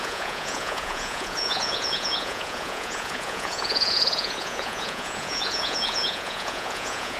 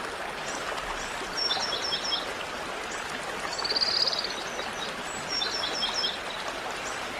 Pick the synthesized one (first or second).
first